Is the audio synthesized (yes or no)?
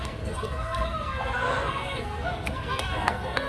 yes